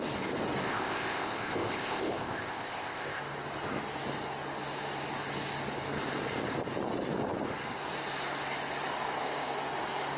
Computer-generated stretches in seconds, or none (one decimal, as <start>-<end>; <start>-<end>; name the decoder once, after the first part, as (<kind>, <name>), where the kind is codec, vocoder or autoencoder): 0.7-3.2 (codec, ZipCodec)

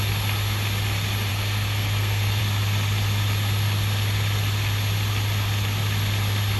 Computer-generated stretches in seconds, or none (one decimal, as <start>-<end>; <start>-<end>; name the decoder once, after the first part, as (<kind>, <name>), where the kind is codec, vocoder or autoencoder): 1.3-2.4 (codec, SNAC)